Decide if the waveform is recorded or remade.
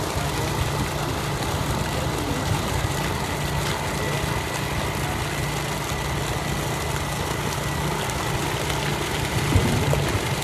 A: recorded